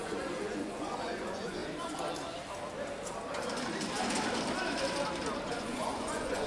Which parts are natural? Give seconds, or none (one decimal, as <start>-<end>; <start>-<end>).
1.6-5.5